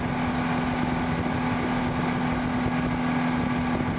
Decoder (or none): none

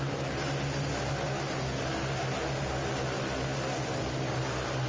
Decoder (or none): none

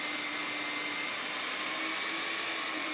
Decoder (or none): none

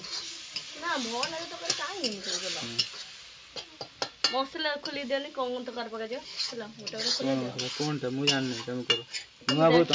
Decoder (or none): none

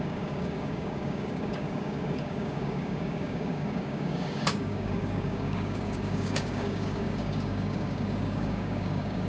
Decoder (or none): codec, DAC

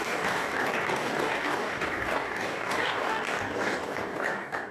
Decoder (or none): codec, DAC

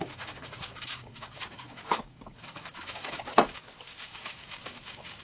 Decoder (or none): codec, DAC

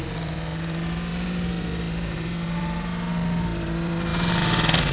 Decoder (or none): none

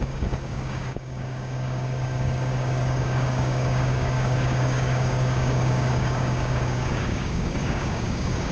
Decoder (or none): codec, DAC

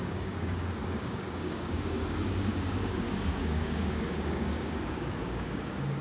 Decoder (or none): codec, DAC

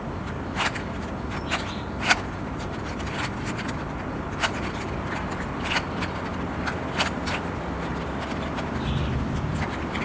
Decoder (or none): none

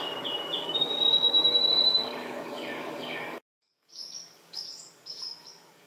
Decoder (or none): codec, DAC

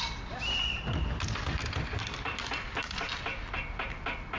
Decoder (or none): none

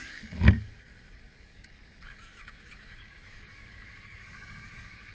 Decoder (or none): codec, DAC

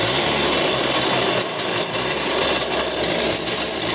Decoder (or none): none